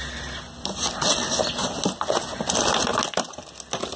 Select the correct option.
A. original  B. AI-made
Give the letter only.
A